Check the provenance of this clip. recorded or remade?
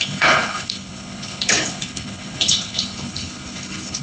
remade